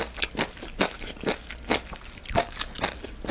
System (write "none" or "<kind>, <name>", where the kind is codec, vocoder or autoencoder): none